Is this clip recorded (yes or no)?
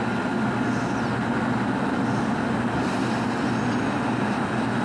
yes